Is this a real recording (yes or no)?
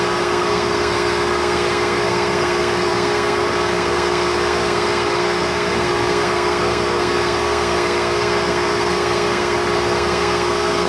no